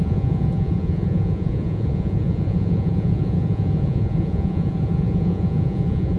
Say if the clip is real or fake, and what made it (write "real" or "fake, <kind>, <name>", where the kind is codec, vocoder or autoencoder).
fake, vocoder, Vocos